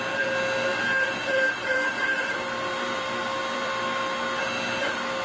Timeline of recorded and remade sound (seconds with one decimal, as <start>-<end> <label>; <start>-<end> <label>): 0.0-0.7 recorded; 0.7-3.7 remade; 3.7-5.2 recorded